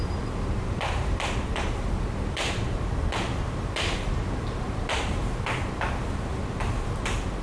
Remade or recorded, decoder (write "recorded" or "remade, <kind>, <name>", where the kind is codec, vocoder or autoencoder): remade, vocoder, BigVGAN v2